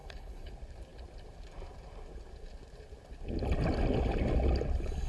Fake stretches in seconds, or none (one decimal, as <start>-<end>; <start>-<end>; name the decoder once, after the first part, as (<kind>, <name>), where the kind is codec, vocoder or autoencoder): 0.0-0.5 (codec, HILCodec)

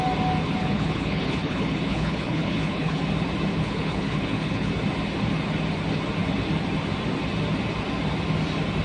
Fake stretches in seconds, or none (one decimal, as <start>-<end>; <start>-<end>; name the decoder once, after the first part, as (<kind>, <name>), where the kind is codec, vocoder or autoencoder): 0.6-3.0 (codec, HILCodec); 3.5-4.7

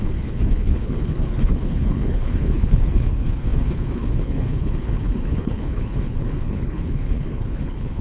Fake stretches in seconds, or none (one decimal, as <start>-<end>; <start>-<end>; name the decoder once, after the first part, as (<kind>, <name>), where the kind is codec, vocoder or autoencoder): 0.0-8.0 (codec, HILCodec)

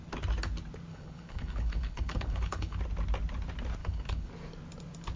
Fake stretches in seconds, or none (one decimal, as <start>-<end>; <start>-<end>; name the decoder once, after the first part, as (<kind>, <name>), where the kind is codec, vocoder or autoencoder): 0.9-2.8 (codec, HILCodec); 3.8-4.3

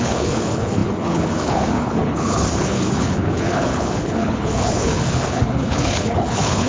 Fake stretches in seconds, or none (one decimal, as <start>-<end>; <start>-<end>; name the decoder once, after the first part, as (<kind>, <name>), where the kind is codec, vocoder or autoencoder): 0.0-6.7 (codec, HILCodec)